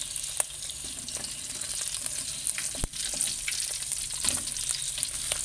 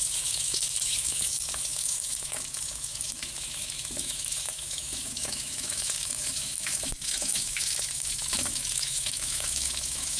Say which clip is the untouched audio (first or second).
first